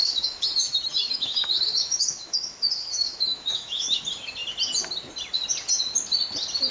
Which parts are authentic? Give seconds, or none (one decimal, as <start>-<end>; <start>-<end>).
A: 4.0-6.7